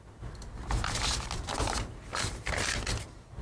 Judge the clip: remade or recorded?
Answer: recorded